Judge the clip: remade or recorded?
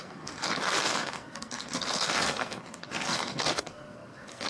remade